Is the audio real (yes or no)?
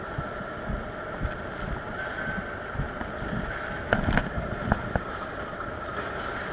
yes